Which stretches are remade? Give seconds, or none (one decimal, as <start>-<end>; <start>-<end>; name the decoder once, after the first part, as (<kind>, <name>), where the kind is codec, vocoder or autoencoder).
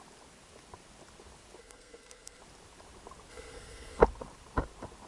1.6-2.4 (codec, SNAC); 3.3-4.0